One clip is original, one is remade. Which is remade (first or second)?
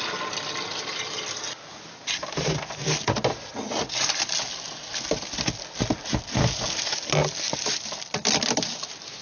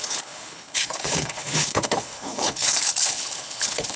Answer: second